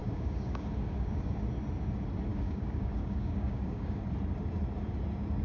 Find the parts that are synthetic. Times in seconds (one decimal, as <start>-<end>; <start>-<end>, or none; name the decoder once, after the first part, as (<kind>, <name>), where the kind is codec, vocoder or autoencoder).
0.0-1.4 (codec, DAC); 2.3-4.0

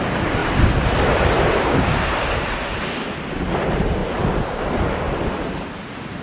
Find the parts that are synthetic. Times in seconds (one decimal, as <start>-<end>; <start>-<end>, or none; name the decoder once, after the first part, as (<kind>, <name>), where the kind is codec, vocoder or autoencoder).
0.0-2.7 (vocoder, BigVGAN v2); 3.5-6.2

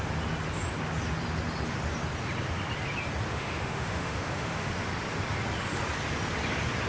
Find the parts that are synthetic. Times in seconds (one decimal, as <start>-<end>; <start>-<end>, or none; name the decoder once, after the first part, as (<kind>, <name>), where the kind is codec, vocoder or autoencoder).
3.3-4.7 (autoencoder, DAC-VAE)

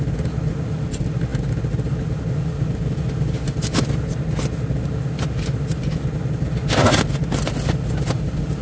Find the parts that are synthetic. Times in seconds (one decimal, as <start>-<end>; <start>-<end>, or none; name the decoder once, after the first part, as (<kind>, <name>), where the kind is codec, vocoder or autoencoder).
none

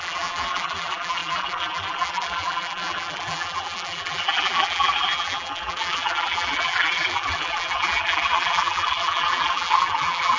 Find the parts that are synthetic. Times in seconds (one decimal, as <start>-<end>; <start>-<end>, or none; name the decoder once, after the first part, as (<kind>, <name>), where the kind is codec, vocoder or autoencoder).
0.0-10.4 (vocoder, BigVGAN v2)

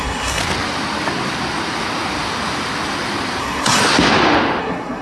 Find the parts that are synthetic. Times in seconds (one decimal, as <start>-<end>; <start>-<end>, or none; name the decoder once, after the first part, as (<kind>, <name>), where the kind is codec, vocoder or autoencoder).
0.0-0.4 (codec, SNAC); 3.4-3.8; 4.6-5.0

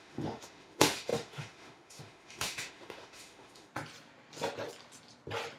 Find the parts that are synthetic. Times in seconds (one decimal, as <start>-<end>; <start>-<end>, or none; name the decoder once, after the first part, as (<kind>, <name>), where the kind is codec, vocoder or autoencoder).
0.0-3.7 (autoencoder, DAC-VAE)